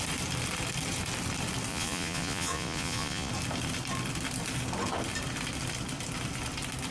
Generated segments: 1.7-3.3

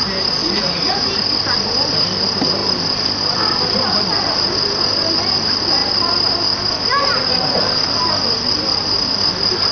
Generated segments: 0.4-1.1

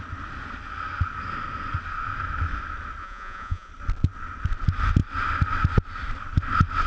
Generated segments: 3.0-3.7

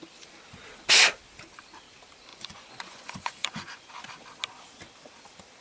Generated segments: 2.3-3.9